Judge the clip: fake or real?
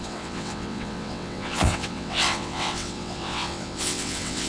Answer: fake